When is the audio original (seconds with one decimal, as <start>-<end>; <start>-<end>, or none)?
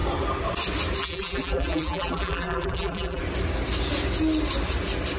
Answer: 0.0-1.0; 3.2-5.2